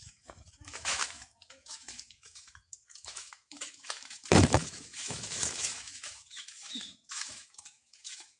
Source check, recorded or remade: remade